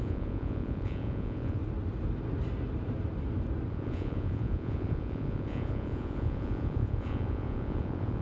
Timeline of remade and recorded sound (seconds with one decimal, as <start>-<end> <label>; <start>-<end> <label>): 0.0-1.6 remade; 1.6-3.7 recorded; 3.7-8.2 remade